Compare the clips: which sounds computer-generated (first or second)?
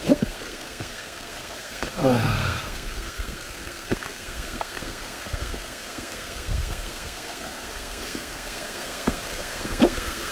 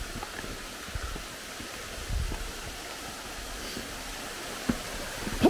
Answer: first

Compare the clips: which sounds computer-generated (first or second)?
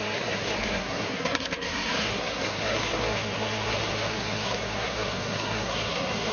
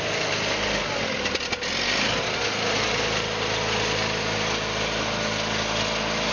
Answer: first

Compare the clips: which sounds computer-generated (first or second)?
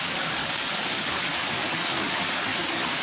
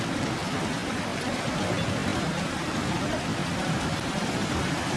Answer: first